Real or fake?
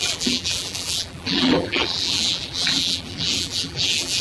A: fake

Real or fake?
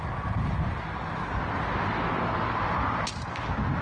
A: real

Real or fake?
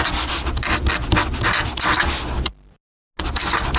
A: real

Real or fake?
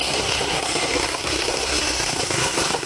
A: fake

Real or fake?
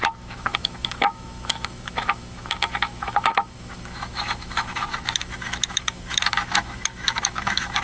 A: fake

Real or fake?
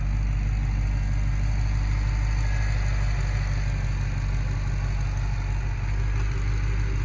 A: real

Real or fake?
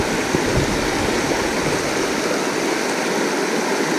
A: real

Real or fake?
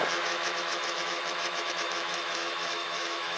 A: fake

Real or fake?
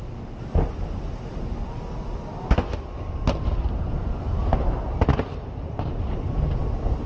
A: real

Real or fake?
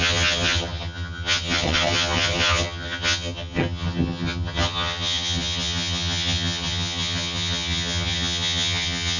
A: fake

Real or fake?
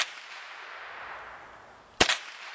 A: real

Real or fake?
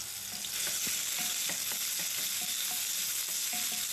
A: real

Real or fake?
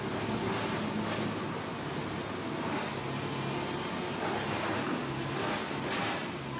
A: real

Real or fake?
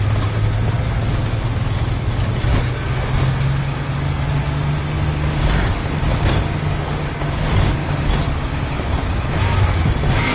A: real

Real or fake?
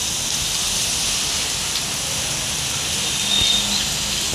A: real